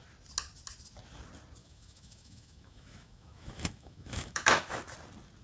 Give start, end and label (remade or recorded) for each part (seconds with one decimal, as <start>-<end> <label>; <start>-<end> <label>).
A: 0.0-1.6 recorded; 1.6-4.8 remade; 4.8-5.4 recorded

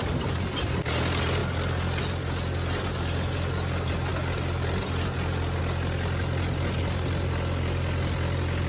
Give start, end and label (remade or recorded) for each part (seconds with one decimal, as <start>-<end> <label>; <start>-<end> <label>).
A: 0.0-8.7 recorded

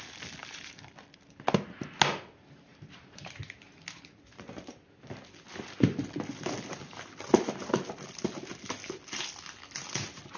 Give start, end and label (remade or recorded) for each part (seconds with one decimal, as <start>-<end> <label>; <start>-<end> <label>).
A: 0.0-0.4 recorded; 0.4-1.0 remade; 1.0-2.7 recorded; 2.7-3.3 remade; 3.3-10.4 recorded

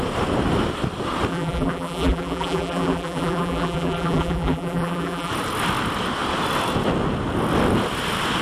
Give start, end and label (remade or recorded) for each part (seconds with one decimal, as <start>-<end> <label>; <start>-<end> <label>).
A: 0.0-1.3 recorded; 1.3-5.3 remade; 5.3-8.4 recorded

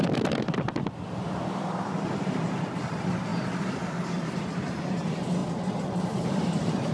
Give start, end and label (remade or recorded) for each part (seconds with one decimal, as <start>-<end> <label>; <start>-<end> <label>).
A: 0.0-5.4 remade; 5.4-6.0 recorded; 6.0-6.9 remade

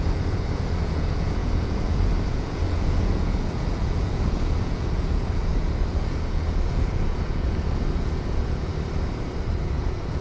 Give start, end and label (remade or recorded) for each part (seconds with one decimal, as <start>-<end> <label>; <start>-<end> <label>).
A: 0.0-8.7 remade; 8.7-9.6 recorded; 9.6-10.2 remade